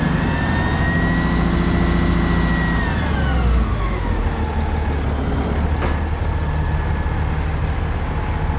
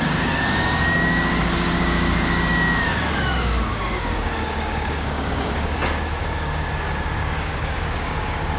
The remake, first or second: second